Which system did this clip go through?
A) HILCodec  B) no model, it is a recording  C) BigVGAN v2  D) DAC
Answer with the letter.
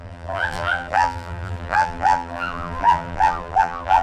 C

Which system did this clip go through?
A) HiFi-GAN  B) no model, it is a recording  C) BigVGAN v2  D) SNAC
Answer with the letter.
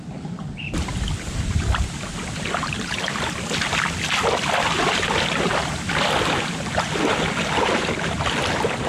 B